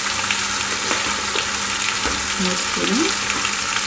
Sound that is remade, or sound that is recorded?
recorded